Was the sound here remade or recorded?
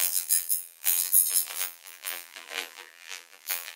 remade